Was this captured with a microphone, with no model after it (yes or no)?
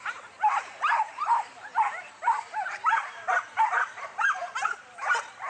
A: no